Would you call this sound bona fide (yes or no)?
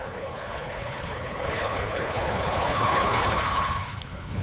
no